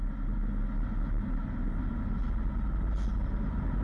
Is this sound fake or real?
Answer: real